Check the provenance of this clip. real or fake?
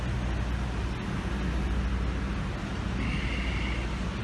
real